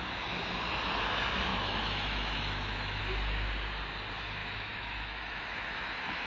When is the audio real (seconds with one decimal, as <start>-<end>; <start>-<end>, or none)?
0.0-1.5; 3.0-4.4